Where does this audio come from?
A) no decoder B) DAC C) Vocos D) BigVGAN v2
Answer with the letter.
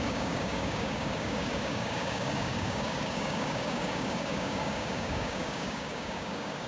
B